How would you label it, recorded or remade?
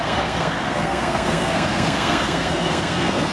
remade